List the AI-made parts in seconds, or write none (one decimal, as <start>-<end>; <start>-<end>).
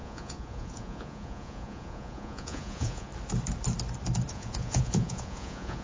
0.0-3.1; 4.3-5.8